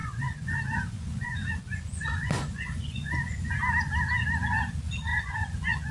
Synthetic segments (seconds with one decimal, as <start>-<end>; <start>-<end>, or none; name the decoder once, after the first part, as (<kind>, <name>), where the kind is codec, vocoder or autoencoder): 0.0-3.5 (vocoder, Vocos); 5.1-5.9